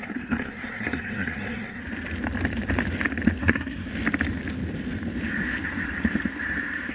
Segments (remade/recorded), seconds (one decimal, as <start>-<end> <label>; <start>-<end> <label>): 0.0-1.8 remade; 1.8-3.4 recorded; 3.4-3.9 remade; 3.9-6.9 recorded